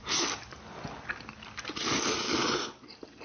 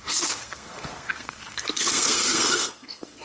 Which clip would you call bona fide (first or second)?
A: first